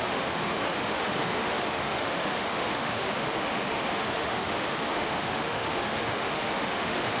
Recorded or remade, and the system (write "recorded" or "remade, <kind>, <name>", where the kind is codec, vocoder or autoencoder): remade, autoencoder, DAC-VAE